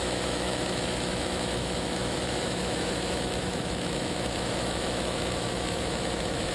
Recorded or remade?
remade